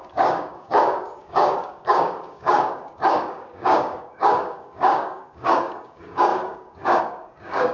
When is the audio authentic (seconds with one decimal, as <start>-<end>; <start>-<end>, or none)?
none